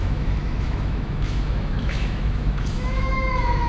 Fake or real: fake